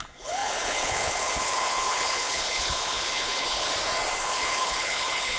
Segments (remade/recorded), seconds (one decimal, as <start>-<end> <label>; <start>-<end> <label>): 0.0-3.7 remade; 3.7-4.2 recorded; 4.2-5.4 remade